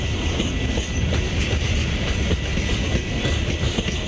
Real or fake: real